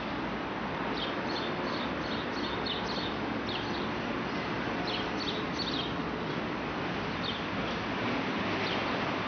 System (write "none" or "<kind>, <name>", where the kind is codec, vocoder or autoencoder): none